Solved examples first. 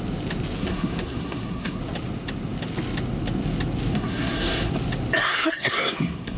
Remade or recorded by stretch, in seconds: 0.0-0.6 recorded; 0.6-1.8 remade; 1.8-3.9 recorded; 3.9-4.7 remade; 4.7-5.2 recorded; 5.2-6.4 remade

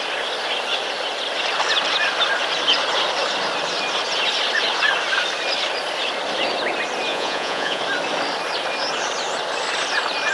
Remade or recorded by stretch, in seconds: 0.0-7.1 recorded; 7.1-7.8 remade; 7.8-10.3 recorded

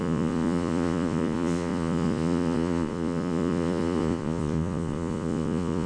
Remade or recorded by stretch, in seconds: 0.0-5.9 remade

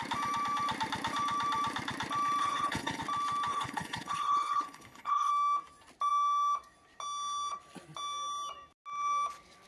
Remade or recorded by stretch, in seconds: 0.0-2.4 recorded; 2.4-3.0 remade; 3.0-3.5 recorded; 3.5-5.3 remade; 5.3-9.7 recorded

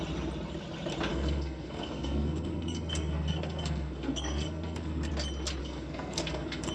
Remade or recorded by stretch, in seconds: 0.0-1.1 recorded; 1.1-5.1 remade; 5.1-5.6 recorded; 5.6-6.7 remade

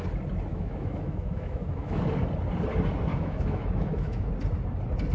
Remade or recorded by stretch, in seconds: 0.0-0.5 recorded; 0.5-2.0 remade; 2.0-3.1 recorded; 3.1-4.3 remade; 4.3-5.1 recorded

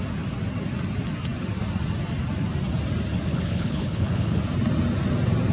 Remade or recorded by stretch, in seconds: 0.0-3.3 recorded; 3.3-4.4 remade; 4.4-5.5 recorded